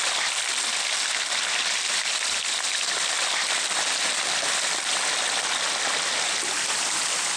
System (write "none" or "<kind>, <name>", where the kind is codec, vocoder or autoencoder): none